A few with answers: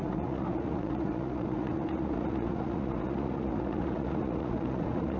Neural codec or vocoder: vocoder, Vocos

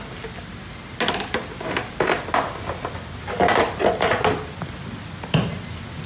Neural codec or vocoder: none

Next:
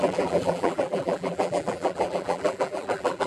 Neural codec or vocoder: vocoder, BigVGAN v2